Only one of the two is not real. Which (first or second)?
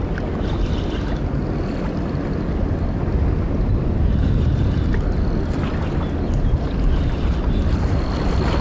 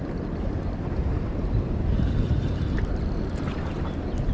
second